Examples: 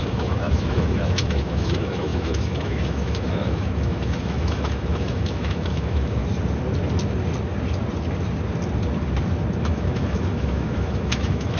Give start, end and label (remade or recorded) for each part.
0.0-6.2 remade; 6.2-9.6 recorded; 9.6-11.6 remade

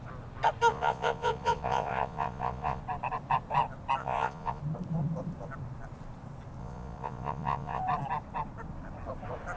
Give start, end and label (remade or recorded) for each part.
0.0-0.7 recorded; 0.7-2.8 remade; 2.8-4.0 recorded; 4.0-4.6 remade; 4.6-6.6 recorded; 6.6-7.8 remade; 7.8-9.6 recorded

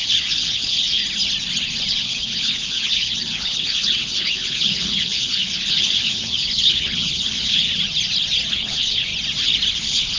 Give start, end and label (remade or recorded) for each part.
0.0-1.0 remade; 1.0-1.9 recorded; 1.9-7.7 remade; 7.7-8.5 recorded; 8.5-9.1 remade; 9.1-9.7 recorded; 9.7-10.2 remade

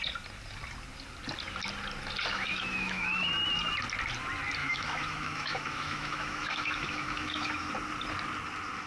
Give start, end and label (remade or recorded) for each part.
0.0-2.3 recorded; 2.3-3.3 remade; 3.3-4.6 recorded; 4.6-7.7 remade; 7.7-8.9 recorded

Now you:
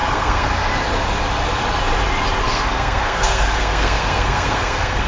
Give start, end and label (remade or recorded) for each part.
0.0-0.7 remade; 0.7-2.4 recorded; 2.4-5.1 remade